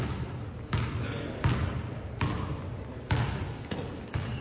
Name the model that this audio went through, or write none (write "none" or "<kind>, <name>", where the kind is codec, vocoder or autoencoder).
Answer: none